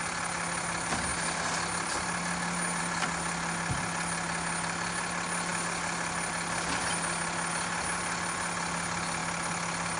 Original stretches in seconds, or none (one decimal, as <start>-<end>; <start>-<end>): 0.0-10.0